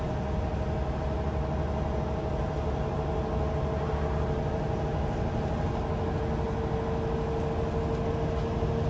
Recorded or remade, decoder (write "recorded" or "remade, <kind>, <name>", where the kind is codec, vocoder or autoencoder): recorded